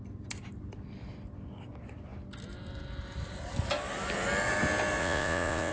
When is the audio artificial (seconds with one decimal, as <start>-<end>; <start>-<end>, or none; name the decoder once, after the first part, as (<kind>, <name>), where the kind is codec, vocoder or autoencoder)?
5.0-5.7 (vocoder, Vocos)